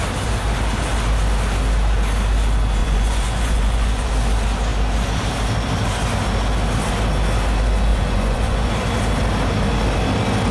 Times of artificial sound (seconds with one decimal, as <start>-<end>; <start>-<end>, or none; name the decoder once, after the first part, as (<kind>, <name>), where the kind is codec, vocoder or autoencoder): 2.8-4.1 (vocoder, Vocos); 7.9-8.7